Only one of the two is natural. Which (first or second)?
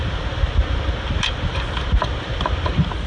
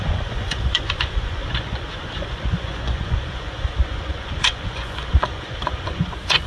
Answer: first